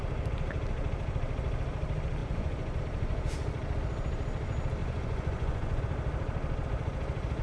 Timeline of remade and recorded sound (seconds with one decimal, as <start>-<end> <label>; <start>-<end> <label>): 0.0-2.2 recorded; 2.2-2.8 remade; 2.8-4.8 recorded; 4.8-5.8 remade; 5.8-7.4 recorded